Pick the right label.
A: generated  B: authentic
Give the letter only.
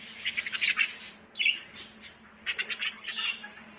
B